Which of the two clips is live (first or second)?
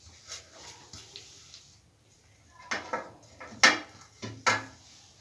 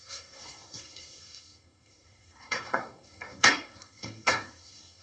first